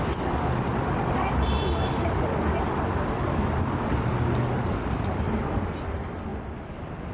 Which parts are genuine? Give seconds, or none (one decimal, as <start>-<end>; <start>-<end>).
0.0-0.7; 3.5-6.3